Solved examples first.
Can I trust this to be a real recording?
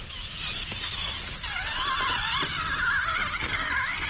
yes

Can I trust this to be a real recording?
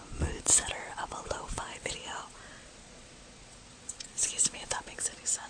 no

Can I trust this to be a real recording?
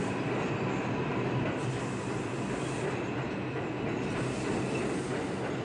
yes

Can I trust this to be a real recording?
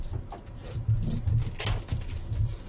yes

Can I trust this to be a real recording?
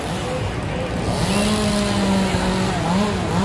yes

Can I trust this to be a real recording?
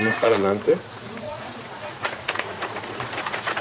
no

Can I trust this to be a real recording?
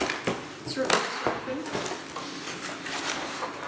yes